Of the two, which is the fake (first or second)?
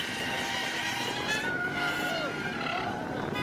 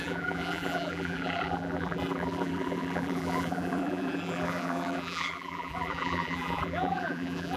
second